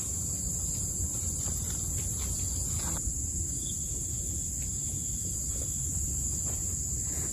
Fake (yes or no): no